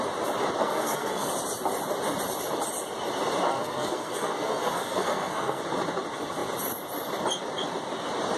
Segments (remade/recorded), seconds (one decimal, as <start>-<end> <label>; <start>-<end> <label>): 0.0-0.6 recorded; 0.6-1.3 remade; 1.3-3.5 recorded; 3.5-5.6 remade; 5.6-8.4 recorded